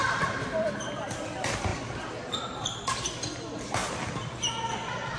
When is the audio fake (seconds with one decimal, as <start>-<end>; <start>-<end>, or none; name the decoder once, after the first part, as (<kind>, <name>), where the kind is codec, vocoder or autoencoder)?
0.0-1.2 (vocoder, BigVGAN v2); 1.7-2.7